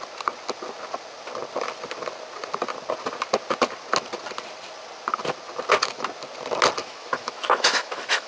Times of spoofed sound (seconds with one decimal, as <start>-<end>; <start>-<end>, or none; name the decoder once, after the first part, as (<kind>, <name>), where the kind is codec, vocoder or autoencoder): 6.8-8.3 (autoencoder, DAC-VAE)